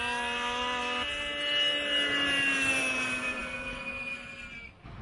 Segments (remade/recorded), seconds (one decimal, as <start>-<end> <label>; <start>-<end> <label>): 0.0-5.0 recorded